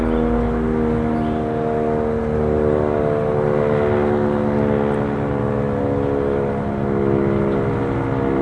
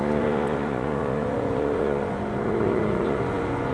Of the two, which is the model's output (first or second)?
second